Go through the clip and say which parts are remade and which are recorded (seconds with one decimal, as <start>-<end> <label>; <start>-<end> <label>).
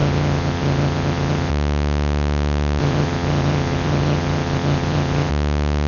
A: 0.0-1.5 remade; 1.5-2.8 recorded; 2.8-5.3 remade; 5.3-5.9 recorded